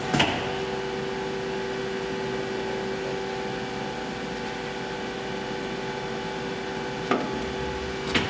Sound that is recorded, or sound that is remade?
recorded